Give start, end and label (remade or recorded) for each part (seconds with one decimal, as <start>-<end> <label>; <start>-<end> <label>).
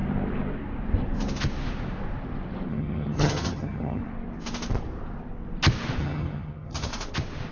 0.0-2.7 recorded; 2.7-4.0 remade; 4.0-6.0 recorded; 6.0-6.9 remade; 6.9-7.5 recorded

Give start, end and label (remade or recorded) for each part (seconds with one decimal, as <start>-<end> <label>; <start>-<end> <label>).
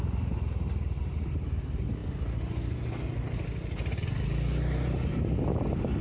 0.0-6.0 recorded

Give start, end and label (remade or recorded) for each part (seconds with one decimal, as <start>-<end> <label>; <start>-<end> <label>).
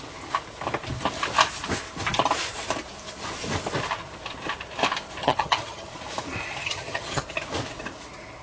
0.0-5.2 recorded; 5.2-5.9 remade; 5.9-6.6 recorded; 6.6-7.2 remade; 7.2-8.4 recorded